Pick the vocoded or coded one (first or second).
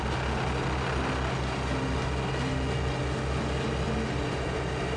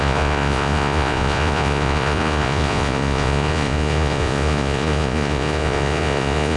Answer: second